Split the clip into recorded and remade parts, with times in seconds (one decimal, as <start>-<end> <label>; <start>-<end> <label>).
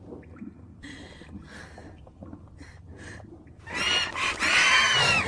0.0-5.3 recorded